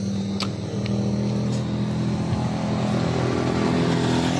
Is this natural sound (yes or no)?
yes